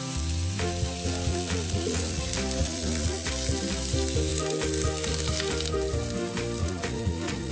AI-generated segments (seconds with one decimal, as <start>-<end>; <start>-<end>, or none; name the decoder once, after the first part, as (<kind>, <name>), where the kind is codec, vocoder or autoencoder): 1.3-2.2 (vocoder, Vocos); 2.6-3.3; 6.6-7.5